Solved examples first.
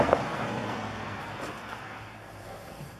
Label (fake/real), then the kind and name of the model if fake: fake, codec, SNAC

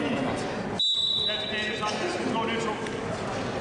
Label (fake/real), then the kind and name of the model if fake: real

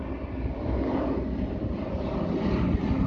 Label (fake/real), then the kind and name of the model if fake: real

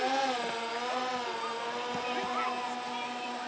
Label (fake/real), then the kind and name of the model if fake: real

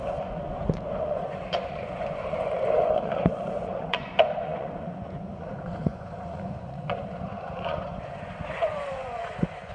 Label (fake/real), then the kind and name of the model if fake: fake, vocoder, Vocos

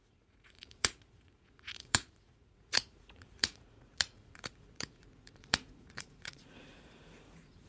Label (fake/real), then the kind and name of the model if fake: fake, vocoder, Vocos